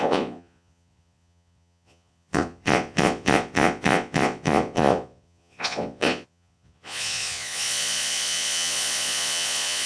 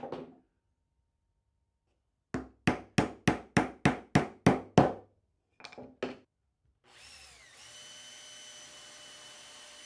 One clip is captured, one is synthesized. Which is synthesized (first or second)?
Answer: first